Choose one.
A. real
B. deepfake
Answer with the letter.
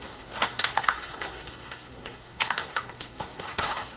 B